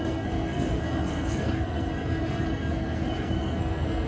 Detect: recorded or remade remade